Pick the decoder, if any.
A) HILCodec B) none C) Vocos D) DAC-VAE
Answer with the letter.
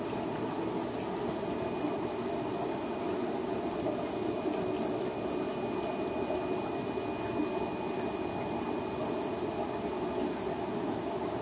B